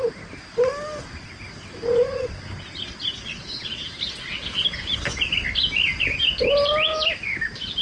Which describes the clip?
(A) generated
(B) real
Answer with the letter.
B